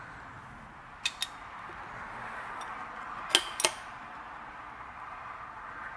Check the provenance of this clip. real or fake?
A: real